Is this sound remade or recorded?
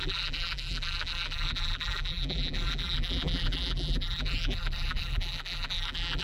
remade